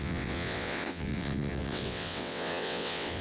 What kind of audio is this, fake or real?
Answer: fake